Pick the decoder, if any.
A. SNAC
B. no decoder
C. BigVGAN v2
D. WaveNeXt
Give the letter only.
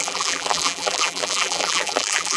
C